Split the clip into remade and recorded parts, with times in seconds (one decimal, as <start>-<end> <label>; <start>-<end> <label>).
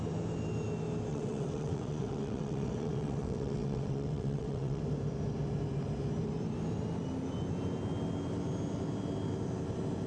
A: 0.0-1.1 recorded; 1.1-4.8 remade; 4.8-10.1 recorded